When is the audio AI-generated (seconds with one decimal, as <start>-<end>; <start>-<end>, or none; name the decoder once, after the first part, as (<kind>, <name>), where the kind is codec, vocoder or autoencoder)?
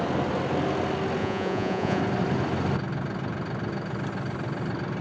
1.2-2.0 (vocoder, Vocos)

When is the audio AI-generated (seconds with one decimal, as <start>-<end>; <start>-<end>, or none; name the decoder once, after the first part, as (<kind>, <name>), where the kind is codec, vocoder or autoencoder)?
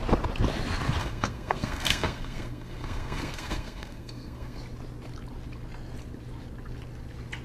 1.0-4.6 (codec, SNAC)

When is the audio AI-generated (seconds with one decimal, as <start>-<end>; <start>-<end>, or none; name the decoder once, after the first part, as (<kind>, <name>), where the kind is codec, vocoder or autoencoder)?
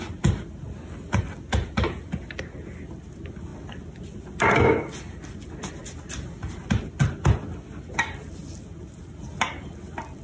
none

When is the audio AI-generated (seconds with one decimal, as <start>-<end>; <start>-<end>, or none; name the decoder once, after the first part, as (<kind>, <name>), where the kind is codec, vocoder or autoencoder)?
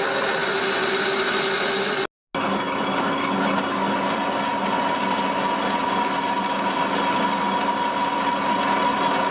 none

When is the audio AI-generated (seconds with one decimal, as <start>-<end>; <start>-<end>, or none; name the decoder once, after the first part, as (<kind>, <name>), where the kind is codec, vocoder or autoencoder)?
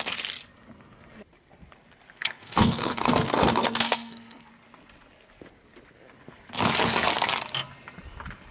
2.2-4.5 (codec, SNAC)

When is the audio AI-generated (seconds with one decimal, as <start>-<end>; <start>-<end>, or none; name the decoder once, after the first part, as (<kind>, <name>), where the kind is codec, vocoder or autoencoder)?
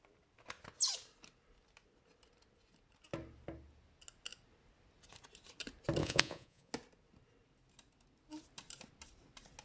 6.0-6.7 (vocoder, Vocos)